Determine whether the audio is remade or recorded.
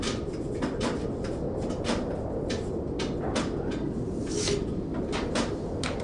recorded